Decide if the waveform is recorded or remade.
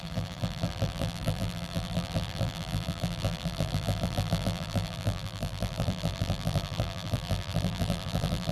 remade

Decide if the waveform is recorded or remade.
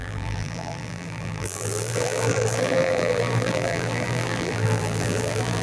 remade